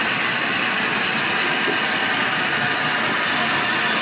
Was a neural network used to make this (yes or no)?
no